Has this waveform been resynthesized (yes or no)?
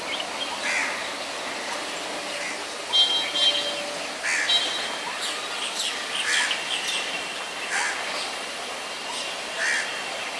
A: no